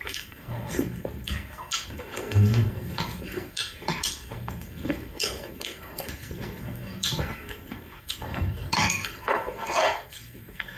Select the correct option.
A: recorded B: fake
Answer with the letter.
B